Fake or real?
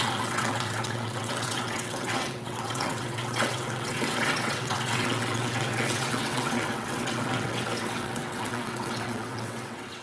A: fake